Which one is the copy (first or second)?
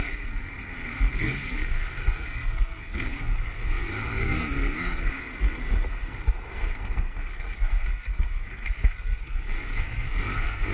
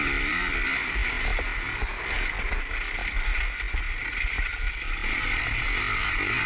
first